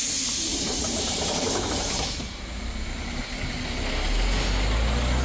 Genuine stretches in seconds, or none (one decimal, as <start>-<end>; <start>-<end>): 0.0-0.5; 3.2-5.2